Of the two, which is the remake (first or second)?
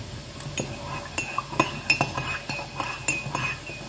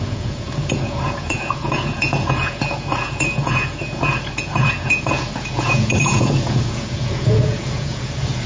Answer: second